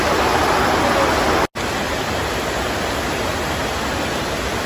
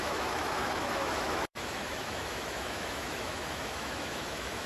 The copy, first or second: second